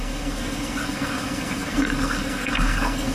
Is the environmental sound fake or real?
fake